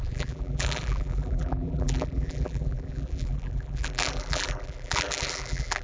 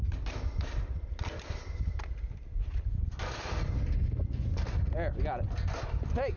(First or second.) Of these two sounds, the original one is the second